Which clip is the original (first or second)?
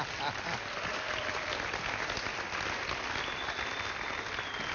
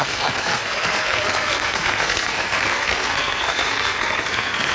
first